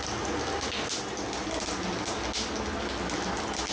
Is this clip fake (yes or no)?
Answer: no